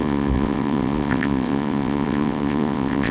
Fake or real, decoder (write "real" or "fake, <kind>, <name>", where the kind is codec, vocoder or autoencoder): fake, vocoder, WaveNeXt